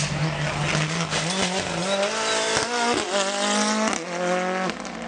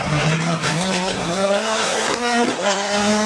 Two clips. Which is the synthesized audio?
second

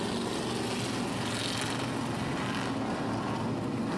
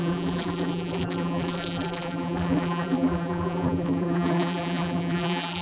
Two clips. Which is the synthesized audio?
second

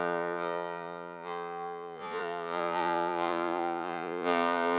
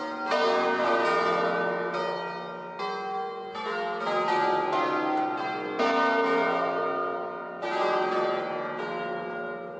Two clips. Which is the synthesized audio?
first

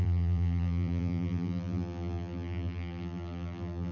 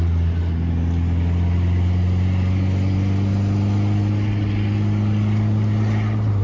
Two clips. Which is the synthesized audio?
first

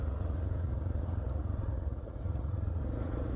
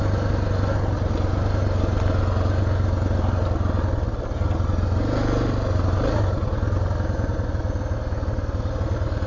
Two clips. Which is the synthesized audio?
first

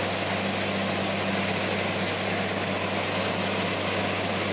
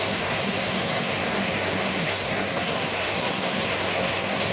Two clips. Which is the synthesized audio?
second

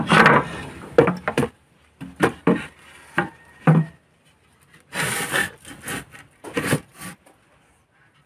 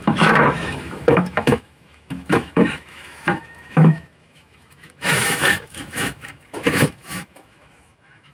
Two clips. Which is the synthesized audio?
second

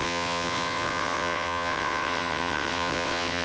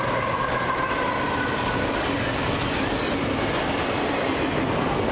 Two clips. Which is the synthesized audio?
first